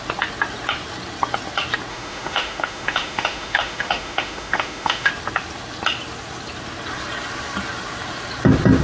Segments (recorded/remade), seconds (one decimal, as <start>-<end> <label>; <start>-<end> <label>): 0.0-1.9 recorded; 1.9-5.1 remade; 5.1-8.8 recorded